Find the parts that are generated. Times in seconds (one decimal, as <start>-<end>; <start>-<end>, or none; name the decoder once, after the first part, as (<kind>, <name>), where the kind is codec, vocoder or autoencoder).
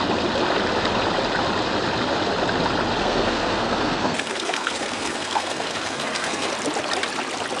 3.0-6.5 (codec, SNAC)